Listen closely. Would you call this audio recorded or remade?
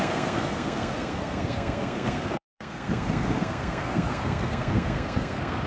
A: remade